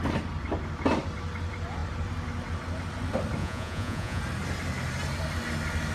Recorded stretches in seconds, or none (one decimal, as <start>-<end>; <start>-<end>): 0.0-3.4; 4.2-5.9